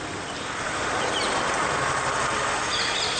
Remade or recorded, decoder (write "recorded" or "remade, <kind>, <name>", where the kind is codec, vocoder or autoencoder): recorded